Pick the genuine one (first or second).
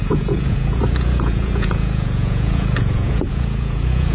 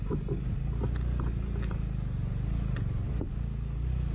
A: second